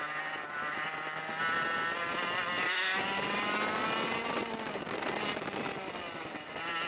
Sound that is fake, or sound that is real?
real